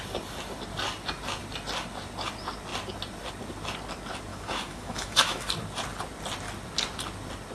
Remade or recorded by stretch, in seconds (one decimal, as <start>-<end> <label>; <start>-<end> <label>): 0.0-4.3 recorded; 4.3-5.5 remade; 5.5-7.5 recorded